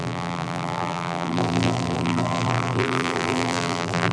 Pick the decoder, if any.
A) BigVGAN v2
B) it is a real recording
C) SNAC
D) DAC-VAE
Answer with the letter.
A